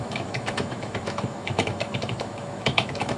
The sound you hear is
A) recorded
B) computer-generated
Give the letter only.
B